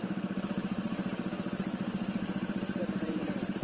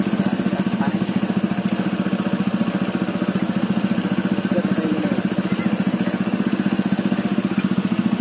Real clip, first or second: second